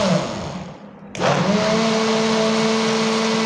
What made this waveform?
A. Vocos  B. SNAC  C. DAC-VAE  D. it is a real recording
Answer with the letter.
D